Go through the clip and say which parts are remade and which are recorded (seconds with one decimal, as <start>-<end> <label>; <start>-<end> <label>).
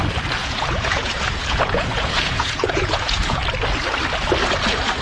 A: 0.0-0.4 recorded; 0.4-3.4 remade; 3.4-5.0 recorded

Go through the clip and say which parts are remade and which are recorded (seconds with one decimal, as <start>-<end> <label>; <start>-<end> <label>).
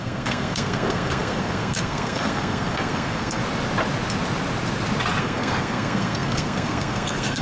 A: 0.0-3.4 remade; 3.4-5.2 recorded; 5.2-7.4 remade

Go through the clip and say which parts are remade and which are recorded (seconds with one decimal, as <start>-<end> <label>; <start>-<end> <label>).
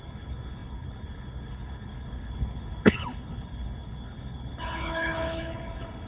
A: 0.0-6.1 remade